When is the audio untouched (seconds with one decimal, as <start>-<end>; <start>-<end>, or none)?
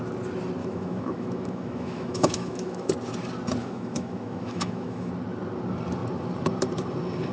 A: 0.0-0.6; 2.9-3.6; 5.1-7.3